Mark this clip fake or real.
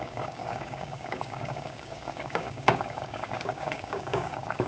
fake